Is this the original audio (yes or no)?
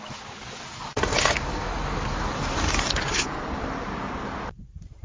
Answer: yes